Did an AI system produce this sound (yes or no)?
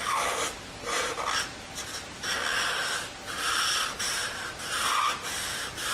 no